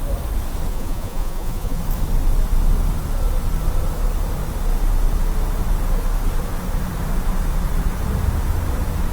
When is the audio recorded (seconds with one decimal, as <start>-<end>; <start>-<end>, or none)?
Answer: 0.0-0.7; 1.8-9.1